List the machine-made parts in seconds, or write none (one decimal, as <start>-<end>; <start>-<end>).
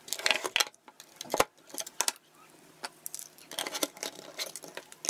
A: none